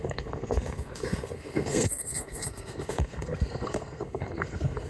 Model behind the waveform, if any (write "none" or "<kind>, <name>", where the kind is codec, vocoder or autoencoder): codec, SNAC